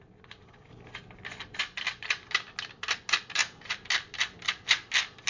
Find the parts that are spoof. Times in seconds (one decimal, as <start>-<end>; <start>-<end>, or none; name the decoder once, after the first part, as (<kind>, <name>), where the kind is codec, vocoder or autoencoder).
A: none